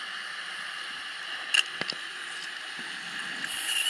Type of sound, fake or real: real